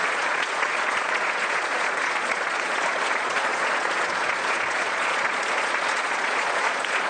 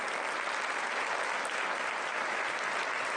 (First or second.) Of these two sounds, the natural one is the second